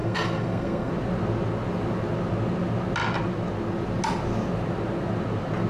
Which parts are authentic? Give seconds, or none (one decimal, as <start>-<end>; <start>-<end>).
0.9-5.7